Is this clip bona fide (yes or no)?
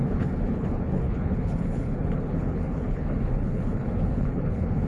no